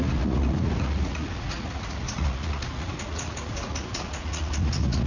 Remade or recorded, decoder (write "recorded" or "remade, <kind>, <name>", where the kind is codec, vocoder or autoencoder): remade, vocoder, Vocos